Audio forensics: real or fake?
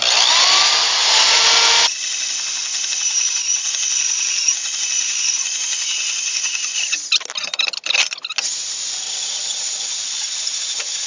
real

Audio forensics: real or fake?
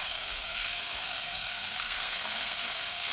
fake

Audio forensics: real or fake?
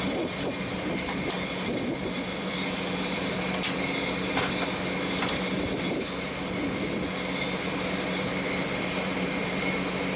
real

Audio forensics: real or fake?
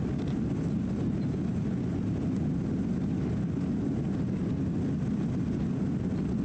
real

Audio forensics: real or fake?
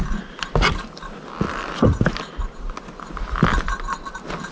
real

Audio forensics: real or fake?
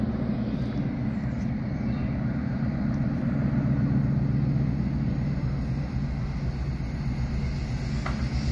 real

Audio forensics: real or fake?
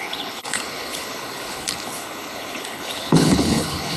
fake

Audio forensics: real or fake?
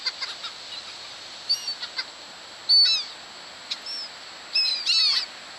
real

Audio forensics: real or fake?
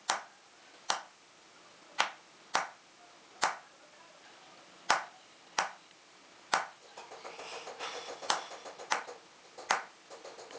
real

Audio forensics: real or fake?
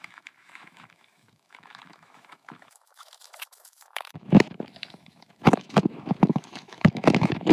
fake